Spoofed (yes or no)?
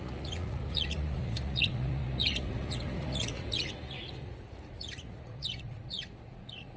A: yes